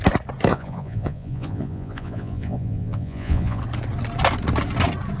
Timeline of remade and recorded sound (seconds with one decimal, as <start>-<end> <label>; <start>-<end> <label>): 0.0-0.5 recorded; 0.5-3.6 remade; 3.6-5.2 recorded